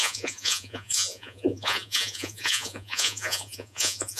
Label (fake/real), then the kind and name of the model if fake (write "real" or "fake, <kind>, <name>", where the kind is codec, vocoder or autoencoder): fake, vocoder, Vocos